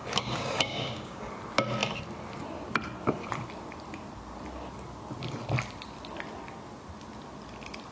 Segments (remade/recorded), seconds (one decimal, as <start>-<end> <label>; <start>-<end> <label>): 0.0-1.3 remade; 1.3-7.9 recorded